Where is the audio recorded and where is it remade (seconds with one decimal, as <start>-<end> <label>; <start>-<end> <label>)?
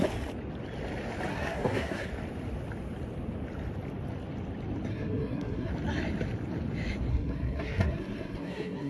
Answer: 0.0-1.3 recorded; 1.3-2.1 remade; 2.1-4.9 recorded; 4.9-5.7 remade; 5.7-7.1 recorded; 7.1-8.9 remade